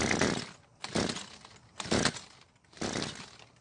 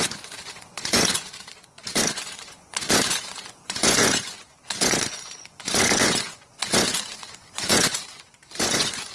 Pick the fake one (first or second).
second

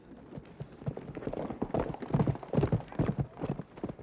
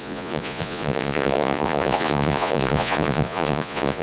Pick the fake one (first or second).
second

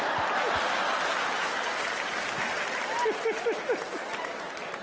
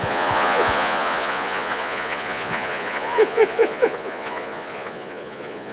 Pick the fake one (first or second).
second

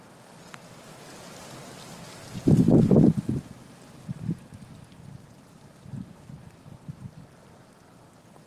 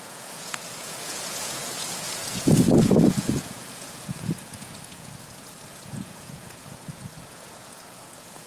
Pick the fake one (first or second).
second